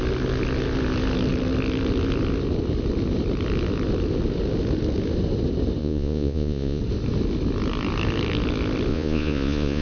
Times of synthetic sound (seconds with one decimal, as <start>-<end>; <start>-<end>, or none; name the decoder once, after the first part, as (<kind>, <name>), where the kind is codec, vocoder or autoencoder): 5.8-6.8 (vocoder, Vocos); 8.9-9.8